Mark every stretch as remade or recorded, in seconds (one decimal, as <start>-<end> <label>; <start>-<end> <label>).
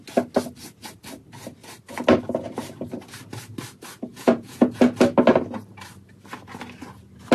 0.0-4.1 recorded; 4.1-4.8 remade; 4.8-7.3 recorded